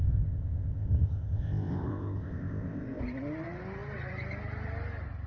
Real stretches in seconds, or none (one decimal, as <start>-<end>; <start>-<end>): 3.0-5.3